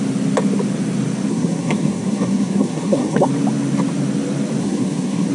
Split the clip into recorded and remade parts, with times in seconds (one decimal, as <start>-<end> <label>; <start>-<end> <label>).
0.0-1.3 recorded; 1.3-3.3 remade; 3.3-4.6 recorded; 4.6-5.3 remade